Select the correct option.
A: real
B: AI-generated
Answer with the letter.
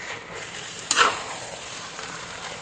B